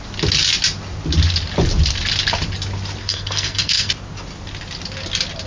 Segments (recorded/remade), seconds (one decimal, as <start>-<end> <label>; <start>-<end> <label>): 0.0-3.0 recorded; 3.0-3.9 remade; 3.9-5.5 recorded